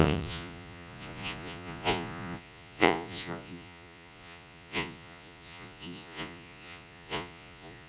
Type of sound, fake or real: fake